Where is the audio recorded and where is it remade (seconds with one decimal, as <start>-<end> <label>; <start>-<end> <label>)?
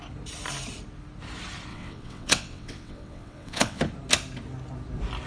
0.0-1.7 recorded; 1.7-3.8 remade; 3.8-5.3 recorded